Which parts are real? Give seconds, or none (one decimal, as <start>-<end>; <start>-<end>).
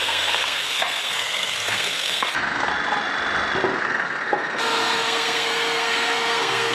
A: 2.7-3.8